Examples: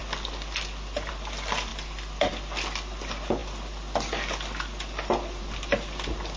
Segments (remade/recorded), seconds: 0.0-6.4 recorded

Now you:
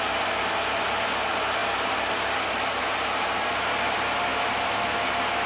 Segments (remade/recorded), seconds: 0.0-4.3 recorded; 4.3-5.1 remade; 5.1-5.5 recorded